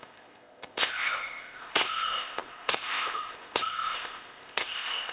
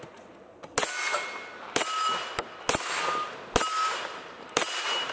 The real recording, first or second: second